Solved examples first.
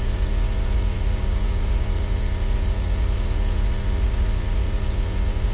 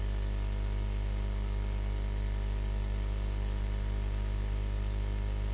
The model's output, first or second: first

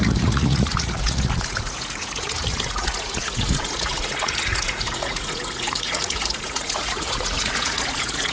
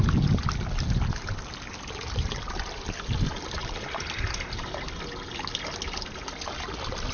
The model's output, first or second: first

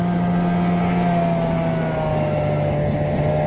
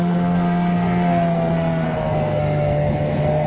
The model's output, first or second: second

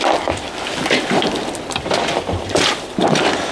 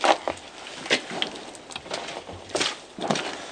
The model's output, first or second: first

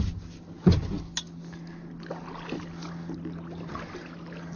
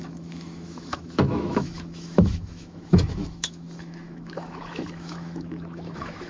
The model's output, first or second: second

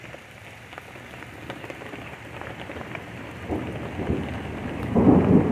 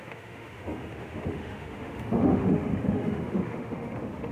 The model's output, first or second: second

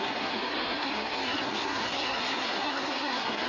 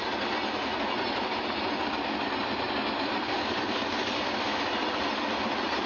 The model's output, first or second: first